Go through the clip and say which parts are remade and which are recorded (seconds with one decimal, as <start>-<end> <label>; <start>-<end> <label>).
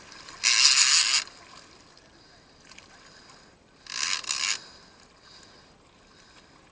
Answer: 0.0-6.7 recorded